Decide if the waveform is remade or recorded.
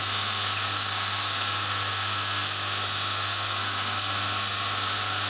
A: remade